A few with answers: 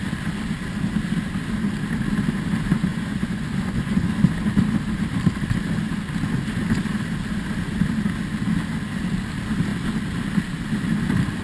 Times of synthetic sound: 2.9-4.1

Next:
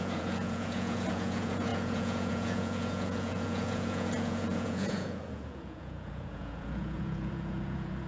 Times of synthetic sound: 0.0-8.1